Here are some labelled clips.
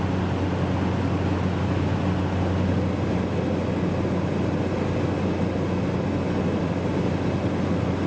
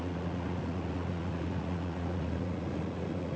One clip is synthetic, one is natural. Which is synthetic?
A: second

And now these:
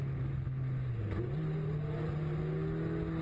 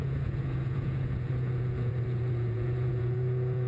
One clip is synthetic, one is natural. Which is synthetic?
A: second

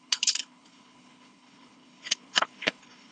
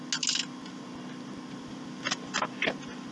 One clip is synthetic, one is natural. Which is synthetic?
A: first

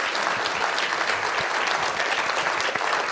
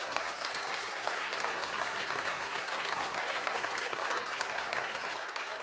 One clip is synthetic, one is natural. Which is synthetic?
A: second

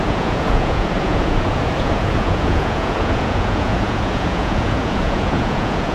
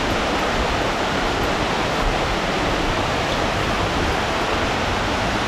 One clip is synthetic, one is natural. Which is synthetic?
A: first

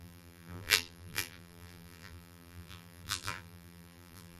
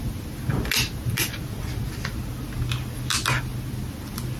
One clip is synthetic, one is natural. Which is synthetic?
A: first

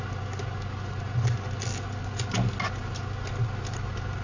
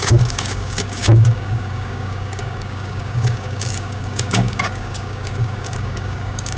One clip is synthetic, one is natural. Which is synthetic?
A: second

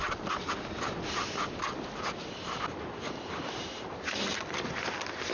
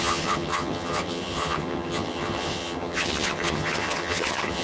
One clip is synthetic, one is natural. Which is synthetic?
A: second